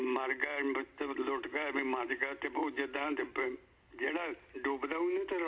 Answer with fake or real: real